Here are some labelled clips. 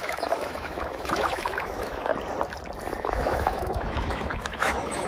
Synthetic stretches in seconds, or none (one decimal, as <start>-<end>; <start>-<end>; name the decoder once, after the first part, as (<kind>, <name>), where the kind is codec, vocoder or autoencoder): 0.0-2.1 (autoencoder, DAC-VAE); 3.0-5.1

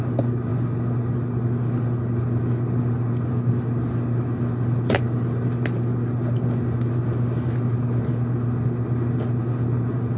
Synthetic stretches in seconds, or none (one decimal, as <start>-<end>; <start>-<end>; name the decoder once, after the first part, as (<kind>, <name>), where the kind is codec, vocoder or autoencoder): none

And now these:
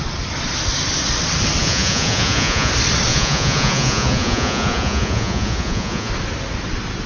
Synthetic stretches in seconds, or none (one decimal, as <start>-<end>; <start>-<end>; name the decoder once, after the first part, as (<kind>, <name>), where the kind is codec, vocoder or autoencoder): 1.6-2.7 (vocoder, Vocos); 3.1-6.1

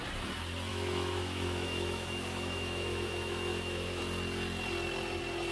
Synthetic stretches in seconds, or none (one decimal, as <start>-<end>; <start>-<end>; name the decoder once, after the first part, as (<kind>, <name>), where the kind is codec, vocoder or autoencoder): 0.7-4.0 (autoencoder, DAC-VAE)